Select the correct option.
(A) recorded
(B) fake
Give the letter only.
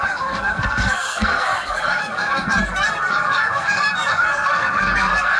B